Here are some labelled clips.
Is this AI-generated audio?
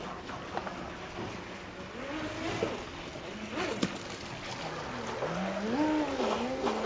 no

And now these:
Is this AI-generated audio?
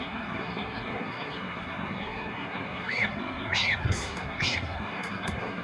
yes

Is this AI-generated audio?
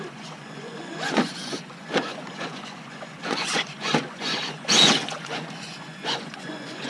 yes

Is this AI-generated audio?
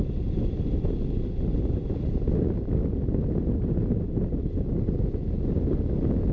no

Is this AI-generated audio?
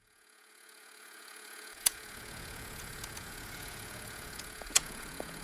yes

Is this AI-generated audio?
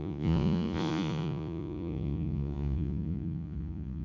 yes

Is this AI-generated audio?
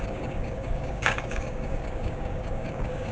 yes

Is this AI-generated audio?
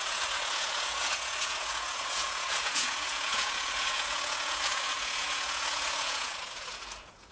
yes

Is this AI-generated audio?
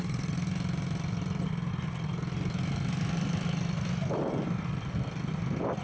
no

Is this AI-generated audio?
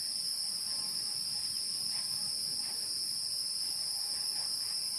no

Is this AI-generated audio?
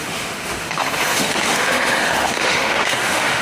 yes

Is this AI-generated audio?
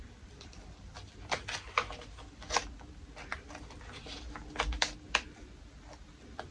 no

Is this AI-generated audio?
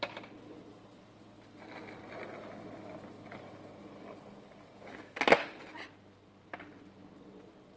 no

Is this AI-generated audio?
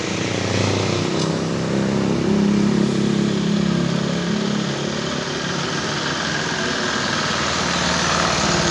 no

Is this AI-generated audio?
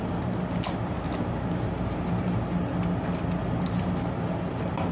no